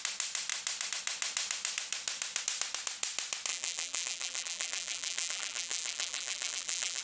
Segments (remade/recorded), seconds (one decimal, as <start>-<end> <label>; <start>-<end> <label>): 0.0-3.5 recorded; 3.5-7.0 remade